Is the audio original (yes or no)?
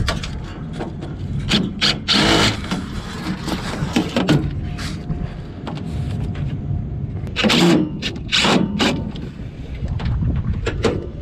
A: yes